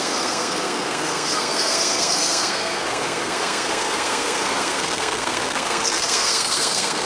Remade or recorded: remade